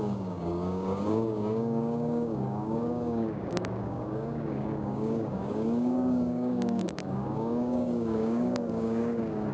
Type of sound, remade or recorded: remade